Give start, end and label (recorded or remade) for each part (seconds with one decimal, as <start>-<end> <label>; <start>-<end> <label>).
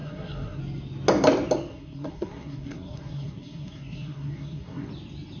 0.0-0.6 remade; 0.6-1.7 recorded; 1.7-4.9 remade; 4.9-5.4 recorded